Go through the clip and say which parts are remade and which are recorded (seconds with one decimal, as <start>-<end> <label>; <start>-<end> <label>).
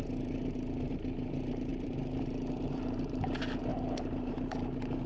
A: 0.0-1.7 recorded; 1.7-3.2 remade; 3.2-5.1 recorded